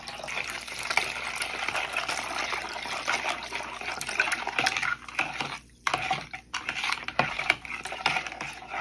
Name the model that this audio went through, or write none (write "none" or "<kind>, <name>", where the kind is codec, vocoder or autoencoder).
none